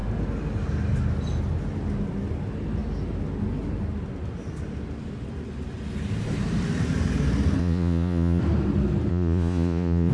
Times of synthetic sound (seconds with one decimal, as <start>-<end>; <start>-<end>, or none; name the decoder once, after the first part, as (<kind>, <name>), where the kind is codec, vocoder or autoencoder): 7.6-8.4 (vocoder, Vocos); 9.1-10.1

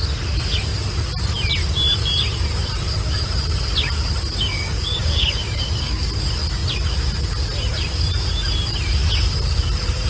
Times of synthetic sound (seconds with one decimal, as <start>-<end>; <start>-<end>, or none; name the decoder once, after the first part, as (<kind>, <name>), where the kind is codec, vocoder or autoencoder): 4.5-6.0 (codec, DAC)

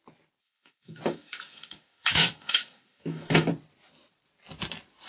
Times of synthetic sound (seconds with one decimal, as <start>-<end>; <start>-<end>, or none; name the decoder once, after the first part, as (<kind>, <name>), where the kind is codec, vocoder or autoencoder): 0.4-3.5 (autoencoder, DAC-VAE)

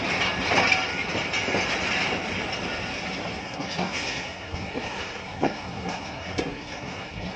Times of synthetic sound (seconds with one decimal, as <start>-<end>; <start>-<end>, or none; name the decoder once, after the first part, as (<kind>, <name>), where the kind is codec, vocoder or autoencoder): 3.4-7.4 (codec, SNAC)